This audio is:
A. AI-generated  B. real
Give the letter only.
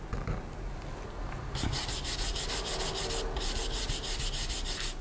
B